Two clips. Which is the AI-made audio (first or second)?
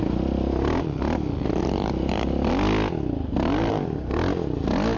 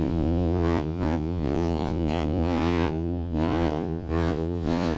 second